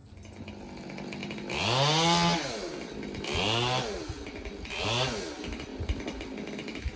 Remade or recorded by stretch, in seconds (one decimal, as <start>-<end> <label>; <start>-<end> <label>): 0.0-7.0 recorded